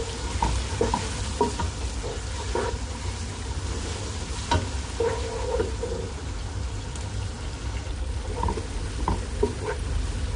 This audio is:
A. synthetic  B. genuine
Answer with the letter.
B